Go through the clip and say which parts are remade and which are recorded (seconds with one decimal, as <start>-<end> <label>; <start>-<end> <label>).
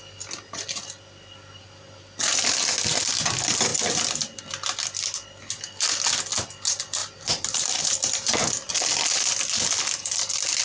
0.0-7.0 recorded; 7.0-8.4 remade; 8.4-10.6 recorded